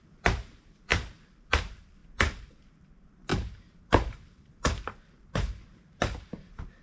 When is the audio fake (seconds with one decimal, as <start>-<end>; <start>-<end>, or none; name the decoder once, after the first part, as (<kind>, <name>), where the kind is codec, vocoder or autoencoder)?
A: 0.0-0.9 (vocoder, BigVGAN v2); 1.6-2.0; 2.8-6.8